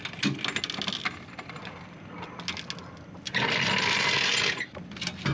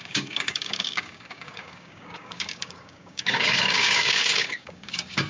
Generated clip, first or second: second